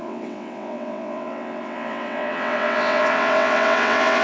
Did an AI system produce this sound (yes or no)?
yes